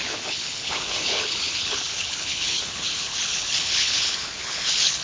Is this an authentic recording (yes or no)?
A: no